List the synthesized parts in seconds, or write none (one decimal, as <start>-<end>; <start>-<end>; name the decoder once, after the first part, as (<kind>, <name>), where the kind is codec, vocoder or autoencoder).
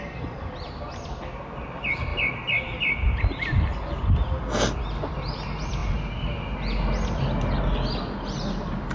none